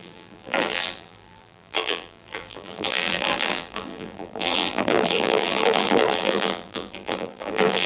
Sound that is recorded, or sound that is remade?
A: remade